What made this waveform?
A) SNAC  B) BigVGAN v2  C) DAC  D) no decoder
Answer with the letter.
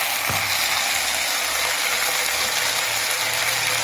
D